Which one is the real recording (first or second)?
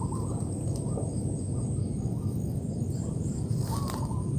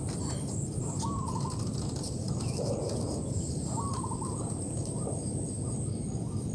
first